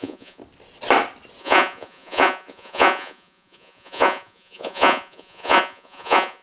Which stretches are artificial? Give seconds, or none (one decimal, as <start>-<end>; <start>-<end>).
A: 0.0-0.4; 1.4-6.4